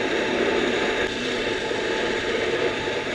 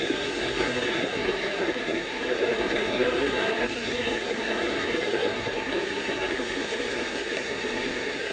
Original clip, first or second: first